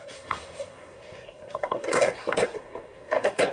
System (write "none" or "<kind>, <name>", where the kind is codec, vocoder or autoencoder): codec, SNAC